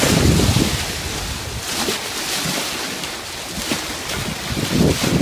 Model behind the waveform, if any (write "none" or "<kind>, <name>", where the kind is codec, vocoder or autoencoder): none